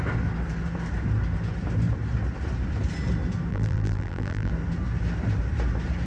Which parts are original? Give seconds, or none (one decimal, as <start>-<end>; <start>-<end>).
0.0-3.5; 4.5-6.1